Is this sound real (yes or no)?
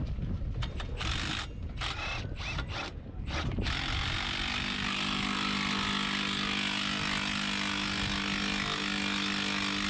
yes